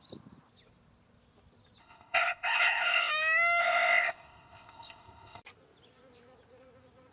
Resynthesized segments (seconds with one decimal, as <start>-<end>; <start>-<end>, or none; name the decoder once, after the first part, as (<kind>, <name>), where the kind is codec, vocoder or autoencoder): 1.8-3.1 (codec, ZipCodec); 3.6-5.4